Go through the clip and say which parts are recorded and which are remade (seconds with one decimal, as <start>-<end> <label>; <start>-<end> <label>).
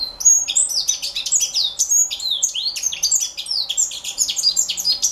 0.0-5.1 recorded